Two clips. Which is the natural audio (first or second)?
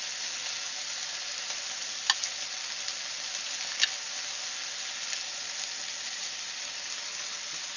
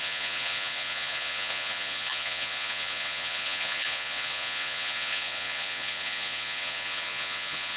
first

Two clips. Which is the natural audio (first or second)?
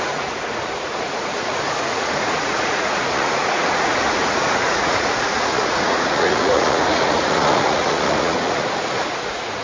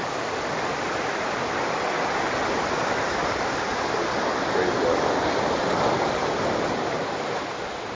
second